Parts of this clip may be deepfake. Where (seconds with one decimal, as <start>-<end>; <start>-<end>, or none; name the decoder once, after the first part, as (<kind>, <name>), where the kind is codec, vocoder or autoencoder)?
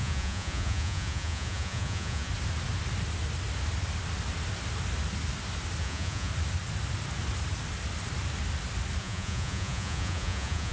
0.0-2.3 (vocoder, Vocos); 5.8-6.3; 9.0-10.7